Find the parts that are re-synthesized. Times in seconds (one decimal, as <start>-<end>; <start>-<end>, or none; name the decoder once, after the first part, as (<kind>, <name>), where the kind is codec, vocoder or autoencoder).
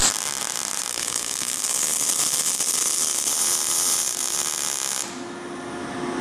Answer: 0.9-3.3 (codec, SNAC)